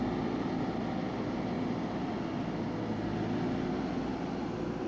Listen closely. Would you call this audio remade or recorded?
recorded